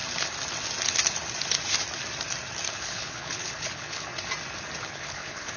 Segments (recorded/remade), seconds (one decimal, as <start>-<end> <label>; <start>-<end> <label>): 0.0-2.7 recorded; 2.7-4.1 remade; 4.1-4.8 recorded; 4.8-5.6 remade